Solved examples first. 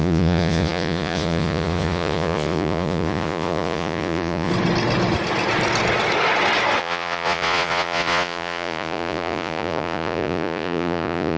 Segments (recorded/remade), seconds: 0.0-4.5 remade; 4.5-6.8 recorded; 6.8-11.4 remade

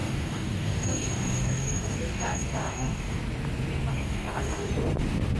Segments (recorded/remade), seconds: 0.0-3.2 remade; 3.2-3.9 recorded; 3.9-4.7 remade; 4.7-5.4 recorded

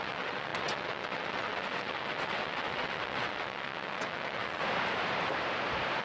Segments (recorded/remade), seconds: 0.0-4.6 remade; 4.6-6.0 recorded

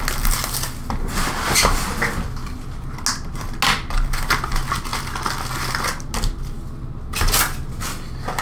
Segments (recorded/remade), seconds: 0.0-8.4 recorded